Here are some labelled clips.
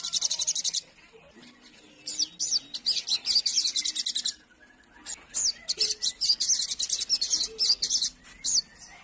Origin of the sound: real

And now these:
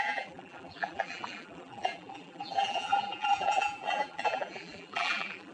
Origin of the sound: fake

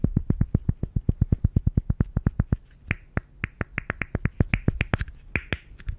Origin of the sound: real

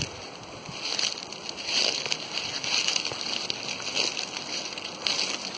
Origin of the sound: real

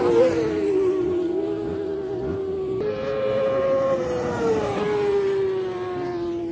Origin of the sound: real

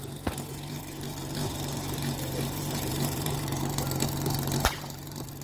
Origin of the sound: fake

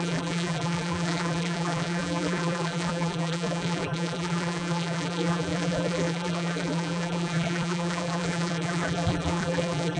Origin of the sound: fake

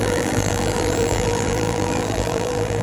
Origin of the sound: fake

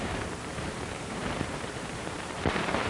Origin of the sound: fake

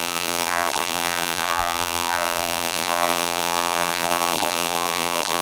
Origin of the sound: fake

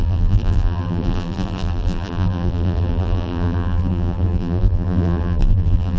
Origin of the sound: fake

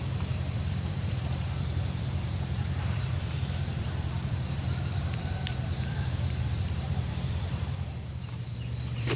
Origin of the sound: fake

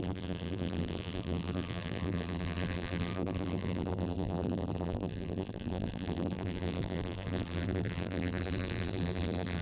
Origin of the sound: fake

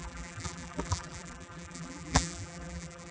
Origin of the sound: fake